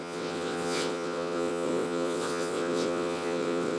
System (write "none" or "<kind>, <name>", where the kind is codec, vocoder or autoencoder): vocoder, WaveNeXt